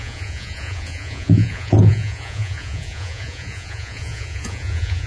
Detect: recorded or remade remade